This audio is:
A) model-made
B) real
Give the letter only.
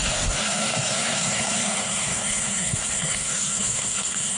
A